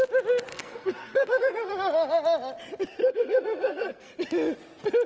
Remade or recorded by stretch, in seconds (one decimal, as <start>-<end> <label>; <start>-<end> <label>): 0.0-0.5 recorded; 0.5-1.7 remade; 1.7-3.0 recorded; 3.0-4.1 remade; 4.1-5.1 recorded